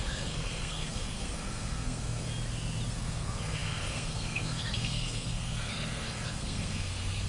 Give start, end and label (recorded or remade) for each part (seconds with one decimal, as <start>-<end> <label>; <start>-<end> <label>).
0.0-2.3 remade; 2.3-2.9 recorded; 2.9-7.3 remade

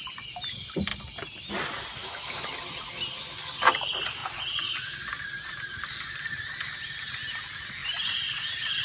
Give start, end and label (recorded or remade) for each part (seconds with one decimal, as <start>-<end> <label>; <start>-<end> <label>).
0.0-2.0 recorded; 2.0-2.5 remade; 2.5-8.8 recorded